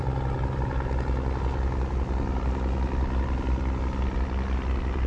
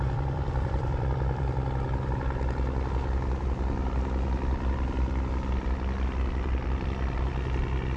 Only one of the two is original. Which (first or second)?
first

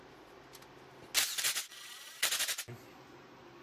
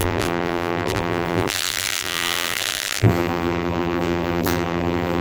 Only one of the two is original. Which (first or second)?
first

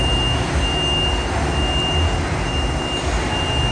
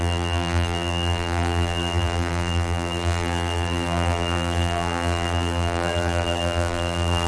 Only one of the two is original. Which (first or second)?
first